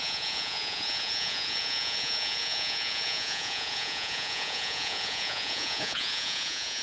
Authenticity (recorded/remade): remade